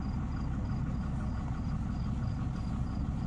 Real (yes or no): yes